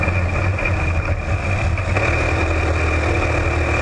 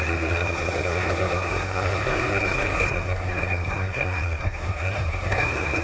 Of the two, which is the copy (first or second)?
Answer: second